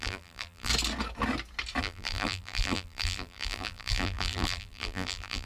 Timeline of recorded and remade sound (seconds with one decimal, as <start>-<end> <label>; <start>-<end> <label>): 0.0-0.7 remade; 0.7-1.8 recorded; 1.8-5.5 remade